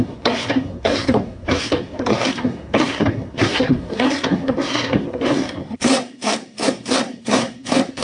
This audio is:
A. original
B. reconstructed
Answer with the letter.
B